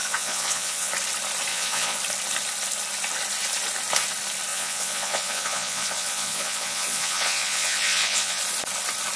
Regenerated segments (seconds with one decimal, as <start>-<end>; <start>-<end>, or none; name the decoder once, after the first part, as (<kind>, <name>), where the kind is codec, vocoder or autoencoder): 0.0-0.9 (vocoder, Vocos); 1.5-2.0; 4.5-8.4